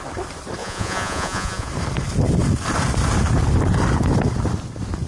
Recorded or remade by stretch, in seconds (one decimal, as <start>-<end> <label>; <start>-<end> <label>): 0.0-0.6 recorded; 0.6-1.7 remade; 1.7-5.1 recorded